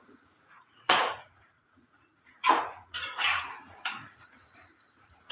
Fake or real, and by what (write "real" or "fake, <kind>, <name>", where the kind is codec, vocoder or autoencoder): fake, vocoder, Vocos